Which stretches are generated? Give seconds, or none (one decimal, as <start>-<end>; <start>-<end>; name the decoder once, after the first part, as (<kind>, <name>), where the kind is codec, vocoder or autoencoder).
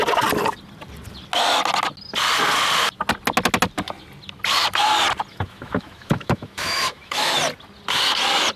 5.3-7.3 (autoencoder, DAC-VAE)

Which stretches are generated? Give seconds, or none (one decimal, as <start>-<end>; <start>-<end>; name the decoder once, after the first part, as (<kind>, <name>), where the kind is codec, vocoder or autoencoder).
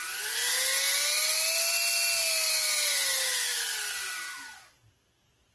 none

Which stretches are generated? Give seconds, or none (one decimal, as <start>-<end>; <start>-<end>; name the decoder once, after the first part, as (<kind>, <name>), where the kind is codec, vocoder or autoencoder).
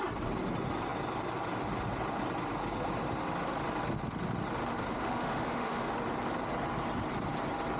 5.0-5.9 (autoencoder, DAC-VAE)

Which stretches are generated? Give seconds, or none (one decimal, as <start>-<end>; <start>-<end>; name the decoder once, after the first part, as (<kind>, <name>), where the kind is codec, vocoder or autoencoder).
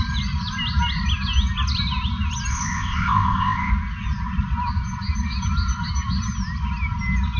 2.5-3.7 (codec, ZipCodec)